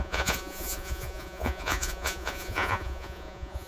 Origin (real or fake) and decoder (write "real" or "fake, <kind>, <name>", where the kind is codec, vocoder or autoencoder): fake, vocoder, Vocos